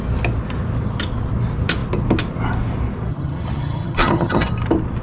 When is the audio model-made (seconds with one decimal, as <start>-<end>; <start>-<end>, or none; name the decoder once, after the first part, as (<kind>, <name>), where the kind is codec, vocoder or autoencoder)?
3.1-4.5 (vocoder, HiFi-GAN)